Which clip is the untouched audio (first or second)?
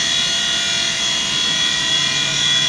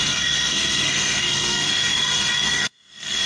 first